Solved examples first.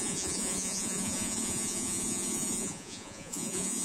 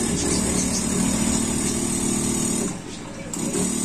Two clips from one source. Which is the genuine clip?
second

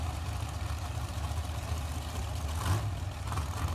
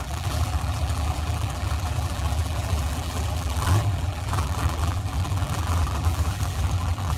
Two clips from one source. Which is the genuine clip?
first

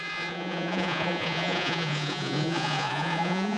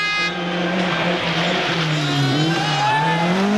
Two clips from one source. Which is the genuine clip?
second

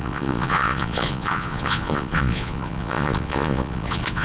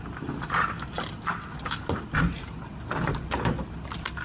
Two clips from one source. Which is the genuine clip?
second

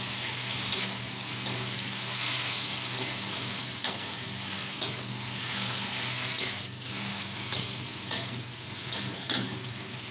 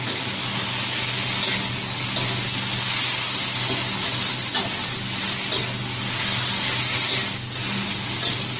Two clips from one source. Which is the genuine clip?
second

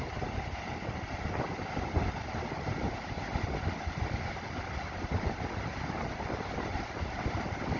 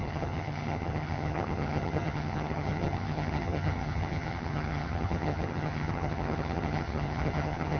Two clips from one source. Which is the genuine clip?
first